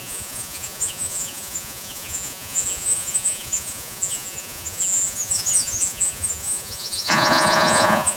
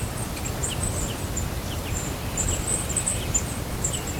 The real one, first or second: second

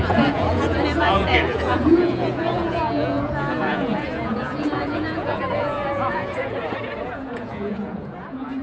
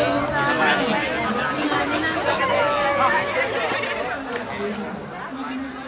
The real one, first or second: second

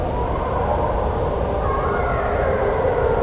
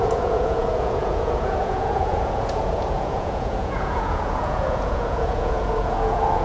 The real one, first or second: first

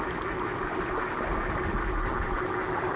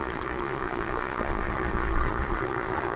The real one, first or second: first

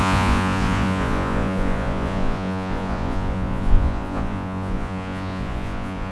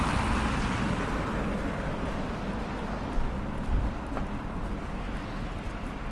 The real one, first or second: second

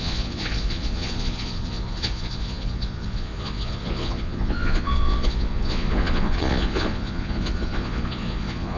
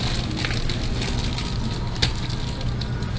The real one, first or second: second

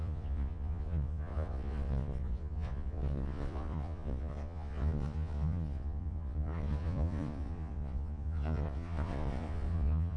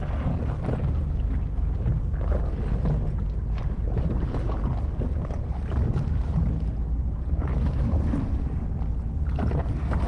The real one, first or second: second